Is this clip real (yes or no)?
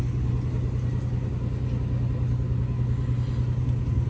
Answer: yes